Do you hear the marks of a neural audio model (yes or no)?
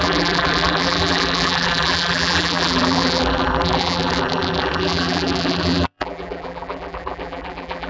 yes